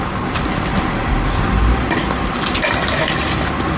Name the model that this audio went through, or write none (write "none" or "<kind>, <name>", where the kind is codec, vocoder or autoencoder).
none